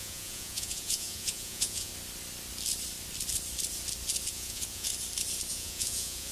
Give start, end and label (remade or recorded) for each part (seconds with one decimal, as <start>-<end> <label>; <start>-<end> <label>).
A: 0.0-1.9 remade; 1.9-4.3 recorded; 4.3-4.9 remade; 4.9-5.5 recorded; 5.5-6.3 remade